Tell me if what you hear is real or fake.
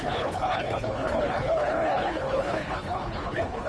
fake